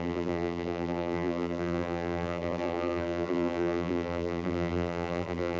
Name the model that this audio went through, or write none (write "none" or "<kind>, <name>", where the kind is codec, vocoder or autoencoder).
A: vocoder, BigVGAN v2